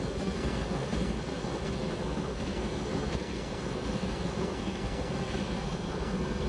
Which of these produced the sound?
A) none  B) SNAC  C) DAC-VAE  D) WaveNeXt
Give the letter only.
B